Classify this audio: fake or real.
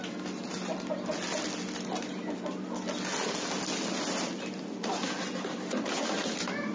real